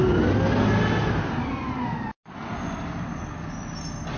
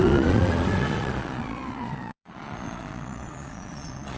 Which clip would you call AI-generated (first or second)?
second